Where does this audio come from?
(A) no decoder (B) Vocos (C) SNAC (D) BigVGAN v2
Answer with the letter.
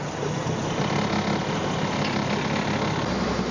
A